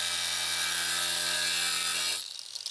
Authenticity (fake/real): real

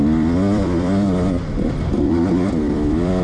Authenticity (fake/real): fake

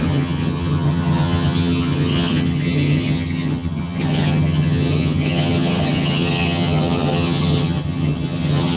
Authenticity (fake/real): fake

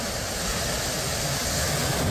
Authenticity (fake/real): real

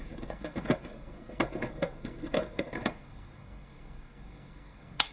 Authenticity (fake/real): fake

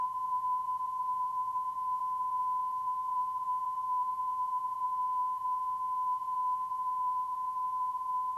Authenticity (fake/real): fake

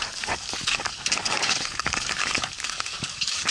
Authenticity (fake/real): fake